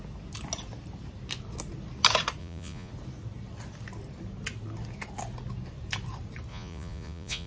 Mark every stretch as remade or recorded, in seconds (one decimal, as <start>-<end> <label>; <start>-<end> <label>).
0.0-2.4 recorded; 2.4-2.9 remade; 2.9-6.5 recorded; 6.5-7.5 remade